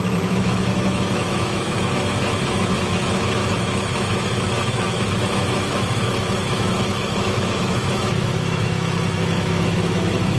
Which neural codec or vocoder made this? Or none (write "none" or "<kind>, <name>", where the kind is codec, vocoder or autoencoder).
autoencoder, DAC-VAE